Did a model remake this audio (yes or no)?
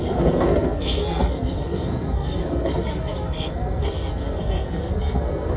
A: yes